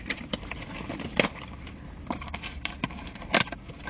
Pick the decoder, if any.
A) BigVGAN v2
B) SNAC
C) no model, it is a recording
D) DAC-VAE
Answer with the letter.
A